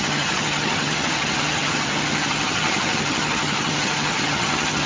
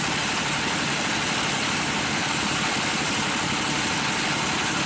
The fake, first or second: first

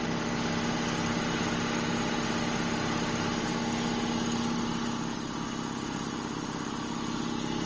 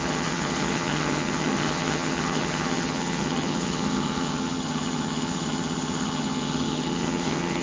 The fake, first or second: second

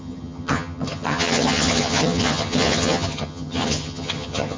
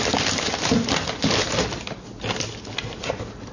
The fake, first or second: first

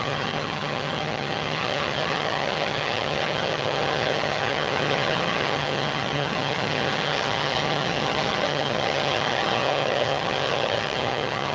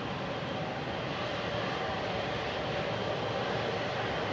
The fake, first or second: first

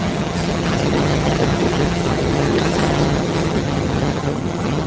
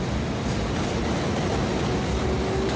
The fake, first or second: first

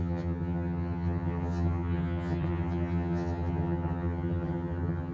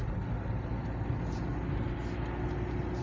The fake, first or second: first